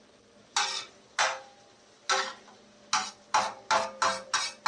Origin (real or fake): real